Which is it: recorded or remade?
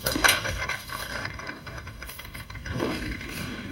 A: remade